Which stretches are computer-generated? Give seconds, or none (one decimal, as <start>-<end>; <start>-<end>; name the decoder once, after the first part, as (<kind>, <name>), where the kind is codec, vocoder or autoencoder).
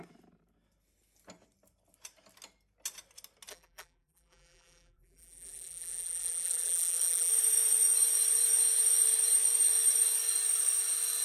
3.5-7.3 (vocoder, BigVGAN v2)